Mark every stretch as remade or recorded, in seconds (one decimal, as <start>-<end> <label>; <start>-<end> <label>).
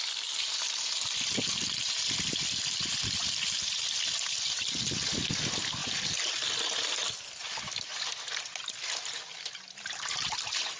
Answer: 0.0-10.8 recorded